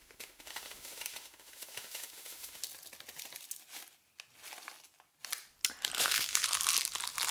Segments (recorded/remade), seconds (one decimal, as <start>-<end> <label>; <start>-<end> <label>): 0.0-2.6 remade; 2.6-6.0 recorded; 6.0-6.4 remade; 6.4-7.3 recorded